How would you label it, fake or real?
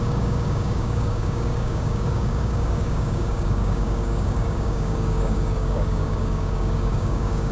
fake